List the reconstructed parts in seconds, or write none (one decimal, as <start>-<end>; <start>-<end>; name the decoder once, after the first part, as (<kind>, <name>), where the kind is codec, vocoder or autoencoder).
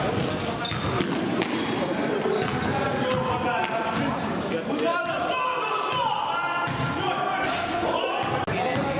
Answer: none